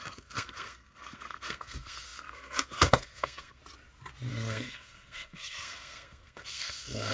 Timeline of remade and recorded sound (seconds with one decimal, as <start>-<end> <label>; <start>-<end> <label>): 0.0-3.6 remade; 3.6-4.3 recorded; 4.3-7.1 remade